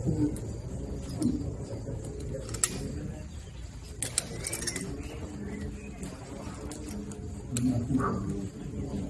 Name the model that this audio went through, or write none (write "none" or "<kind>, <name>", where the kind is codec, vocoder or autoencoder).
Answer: none